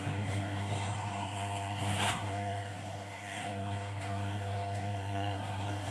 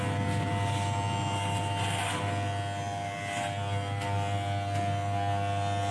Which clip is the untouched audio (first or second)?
second